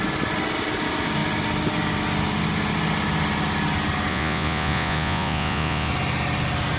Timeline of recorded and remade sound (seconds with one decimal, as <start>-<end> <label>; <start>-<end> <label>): 0.0-4.1 recorded; 4.1-5.9 remade; 5.9-6.8 recorded